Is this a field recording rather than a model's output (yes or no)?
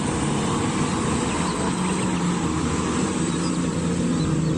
yes